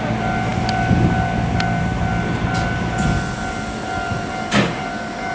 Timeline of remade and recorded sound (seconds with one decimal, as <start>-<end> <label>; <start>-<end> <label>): 0.0-5.3 recorded